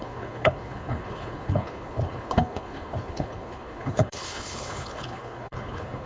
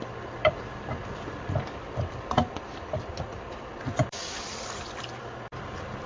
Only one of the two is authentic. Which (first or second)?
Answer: second